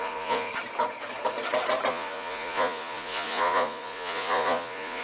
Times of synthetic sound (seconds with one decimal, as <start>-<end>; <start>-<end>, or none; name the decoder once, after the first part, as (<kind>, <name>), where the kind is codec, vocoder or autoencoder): 0.0-0.5 (vocoder, Vocos); 1.9-5.0